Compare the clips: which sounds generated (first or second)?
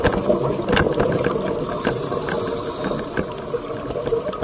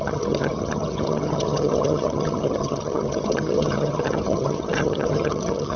second